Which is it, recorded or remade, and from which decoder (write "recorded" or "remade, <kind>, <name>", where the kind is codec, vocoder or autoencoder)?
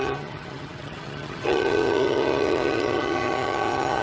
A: remade, vocoder, HiFi-GAN